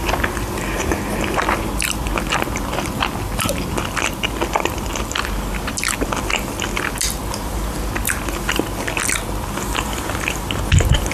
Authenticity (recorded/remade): recorded